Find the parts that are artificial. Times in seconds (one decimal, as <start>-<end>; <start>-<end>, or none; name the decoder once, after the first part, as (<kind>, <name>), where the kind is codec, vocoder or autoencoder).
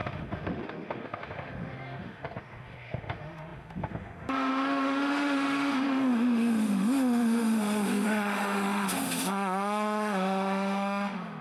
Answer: 0.0-11.4 (autoencoder, DAC-VAE)